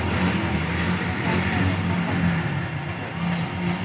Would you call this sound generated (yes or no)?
no